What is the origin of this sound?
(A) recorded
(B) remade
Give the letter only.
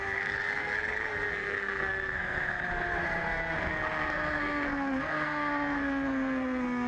B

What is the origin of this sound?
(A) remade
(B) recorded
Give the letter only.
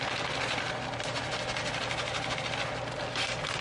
B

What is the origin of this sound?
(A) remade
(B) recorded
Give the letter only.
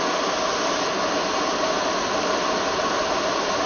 B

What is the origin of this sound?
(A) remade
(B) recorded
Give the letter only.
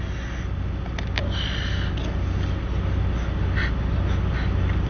B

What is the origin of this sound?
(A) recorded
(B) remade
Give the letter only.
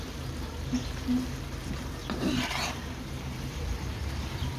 B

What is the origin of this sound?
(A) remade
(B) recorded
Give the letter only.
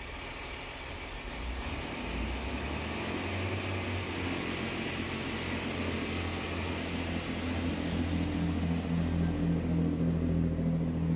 B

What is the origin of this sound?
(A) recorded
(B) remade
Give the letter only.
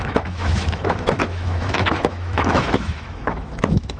B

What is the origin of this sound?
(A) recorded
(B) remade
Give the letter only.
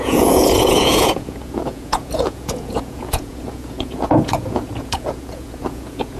B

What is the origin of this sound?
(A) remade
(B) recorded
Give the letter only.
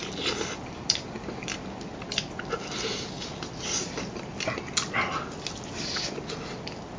B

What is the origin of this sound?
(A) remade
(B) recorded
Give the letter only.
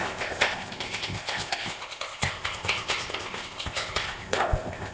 A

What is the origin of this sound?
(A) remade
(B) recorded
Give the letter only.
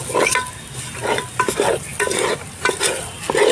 B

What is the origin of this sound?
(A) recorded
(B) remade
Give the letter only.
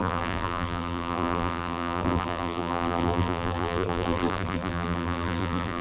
B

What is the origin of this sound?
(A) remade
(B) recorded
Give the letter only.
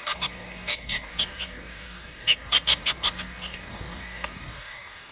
A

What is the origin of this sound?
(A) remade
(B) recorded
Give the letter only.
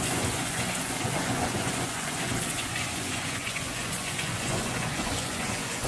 A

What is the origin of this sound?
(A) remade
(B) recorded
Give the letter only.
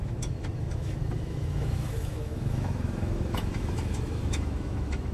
A